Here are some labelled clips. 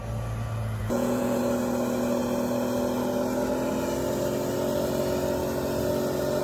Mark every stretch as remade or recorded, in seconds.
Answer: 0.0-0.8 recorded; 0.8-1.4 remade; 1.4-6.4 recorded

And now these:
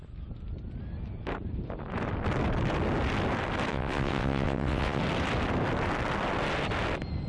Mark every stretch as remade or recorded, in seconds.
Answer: 0.0-3.7 recorded; 3.7-5.0 remade; 5.0-7.3 recorded

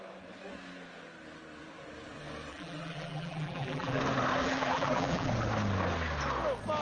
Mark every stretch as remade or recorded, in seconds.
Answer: 0.0-2.5 recorded; 2.5-4.0 remade; 4.0-4.4 recorded; 4.4-5.3 remade; 5.3-6.8 recorded

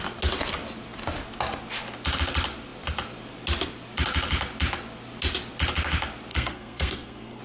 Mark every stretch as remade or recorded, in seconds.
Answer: 0.0-6.3 recorded; 6.3-7.4 remade